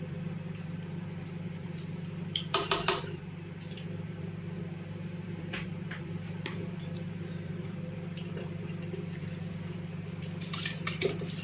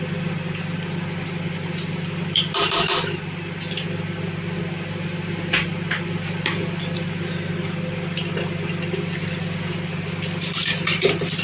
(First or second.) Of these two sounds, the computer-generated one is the first